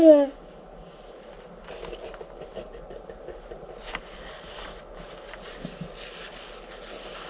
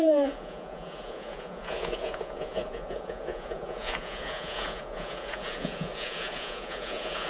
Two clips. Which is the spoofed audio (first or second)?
second